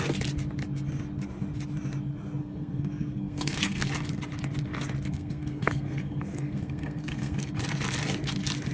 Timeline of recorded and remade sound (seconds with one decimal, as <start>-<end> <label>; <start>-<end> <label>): 0.0-2.4 recorded; 2.4-3.9 remade; 3.9-5.1 recorded; 5.1-7.5 remade; 7.5-8.7 recorded